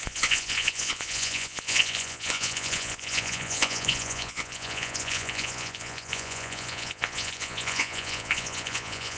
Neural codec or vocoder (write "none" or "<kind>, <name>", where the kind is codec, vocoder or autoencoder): vocoder, Vocos